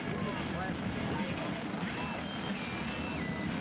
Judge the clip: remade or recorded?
recorded